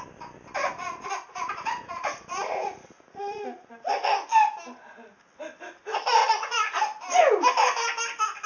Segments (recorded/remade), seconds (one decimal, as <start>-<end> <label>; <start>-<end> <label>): 0.0-0.6 recorded; 0.6-3.7 remade; 3.7-6.2 recorded; 6.2-6.8 remade; 6.8-8.5 recorded

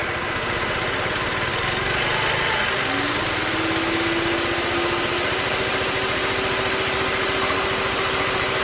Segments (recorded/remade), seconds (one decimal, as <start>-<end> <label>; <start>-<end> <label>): 0.0-8.6 recorded

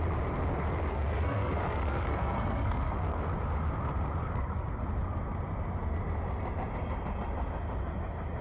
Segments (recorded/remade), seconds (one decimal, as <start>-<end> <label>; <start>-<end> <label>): 0.0-0.9 recorded; 0.9-3.2 remade; 3.2-4.2 recorded; 4.2-4.8 remade; 4.8-8.4 recorded

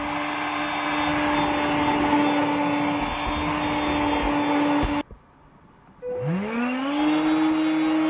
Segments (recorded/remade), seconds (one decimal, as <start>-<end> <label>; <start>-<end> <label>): 0.0-8.1 recorded

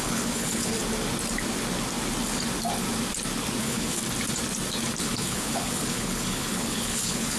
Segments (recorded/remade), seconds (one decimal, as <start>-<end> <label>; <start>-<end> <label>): 0.0-0.7 remade; 0.7-3.6 recorded; 3.6-4.0 remade; 4.0-5.0 recorded; 5.0-7.4 remade

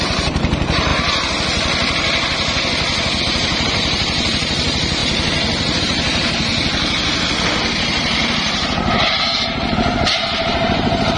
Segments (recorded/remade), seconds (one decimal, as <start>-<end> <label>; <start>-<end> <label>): 0.0-0.9 remade; 0.9-3.2 recorded; 3.2-5.0 remade; 5.0-5.8 recorded; 5.8-6.5 remade; 6.5-7.8 recorded; 7.8-11.2 remade

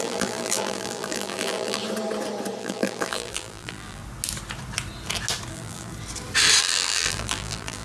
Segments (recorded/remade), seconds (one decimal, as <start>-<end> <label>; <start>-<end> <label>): 0.0-1.8 remade; 1.8-2.6 recorded; 2.6-4.0 remade; 4.0-5.5 recorded; 5.5-5.9 remade; 5.9-6.6 recorded; 6.6-7.8 remade

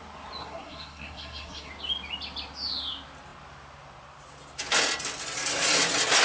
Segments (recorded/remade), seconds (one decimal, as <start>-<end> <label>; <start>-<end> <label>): 0.0-0.4 recorded; 0.4-1.7 remade; 1.7-6.2 recorded